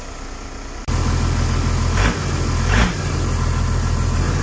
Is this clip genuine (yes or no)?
yes